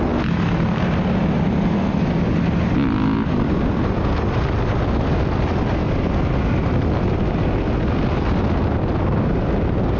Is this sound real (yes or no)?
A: yes